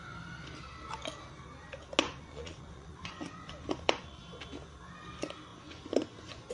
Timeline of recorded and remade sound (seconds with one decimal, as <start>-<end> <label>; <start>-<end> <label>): 0.0-2.0 recorded; 2.0-4.2 remade; 4.2-5.5 recorded; 5.5-6.5 remade

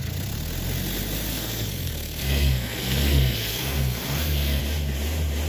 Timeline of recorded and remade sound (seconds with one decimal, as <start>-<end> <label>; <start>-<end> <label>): 0.0-1.3 recorded; 1.3-4.6 remade; 4.6-5.5 recorded

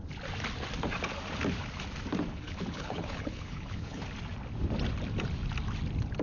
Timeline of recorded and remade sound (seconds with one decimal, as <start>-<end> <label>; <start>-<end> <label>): 0.0-2.3 recorded; 2.3-4.0 remade; 4.0-6.2 recorded